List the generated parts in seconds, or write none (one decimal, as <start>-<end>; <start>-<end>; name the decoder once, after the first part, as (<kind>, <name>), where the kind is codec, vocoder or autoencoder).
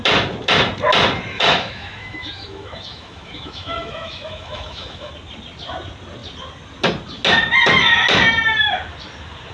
1.3-5.1 (autoencoder, DAC-VAE)